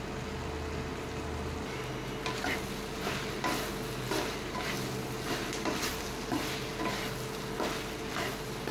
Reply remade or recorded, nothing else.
recorded